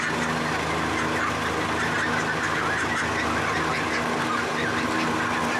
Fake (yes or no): no